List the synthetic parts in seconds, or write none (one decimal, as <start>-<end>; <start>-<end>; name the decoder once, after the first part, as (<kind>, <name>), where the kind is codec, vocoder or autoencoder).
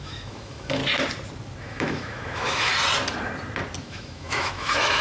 0.0-0.8 (autoencoder, DAC-VAE); 1.6-2.7; 3.8-5.0